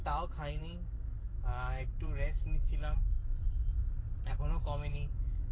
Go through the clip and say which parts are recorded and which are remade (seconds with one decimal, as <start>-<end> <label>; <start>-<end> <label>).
0.0-3.1 remade; 3.1-4.3 recorded; 4.3-5.5 remade